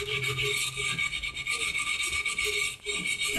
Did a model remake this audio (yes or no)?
no